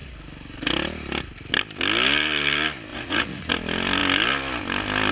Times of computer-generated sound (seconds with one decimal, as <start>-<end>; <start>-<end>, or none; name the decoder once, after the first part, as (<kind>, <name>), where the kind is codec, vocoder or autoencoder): 2.9-3.5 (vocoder, Vocos)